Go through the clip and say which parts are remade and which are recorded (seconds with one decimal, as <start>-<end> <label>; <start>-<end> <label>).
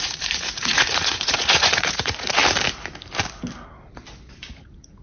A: 0.0-2.4 remade; 2.4-4.5 recorded; 4.5-5.0 remade